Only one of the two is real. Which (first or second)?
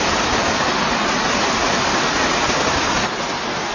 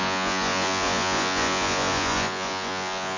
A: first